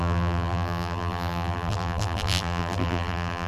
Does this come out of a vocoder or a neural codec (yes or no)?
yes